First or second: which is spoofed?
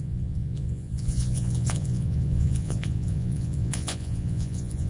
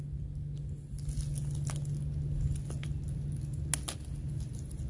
first